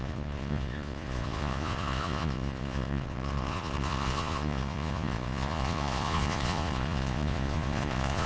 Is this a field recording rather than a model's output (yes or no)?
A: no